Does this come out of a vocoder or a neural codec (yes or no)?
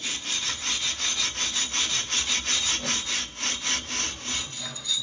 no